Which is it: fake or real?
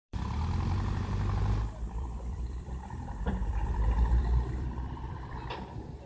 fake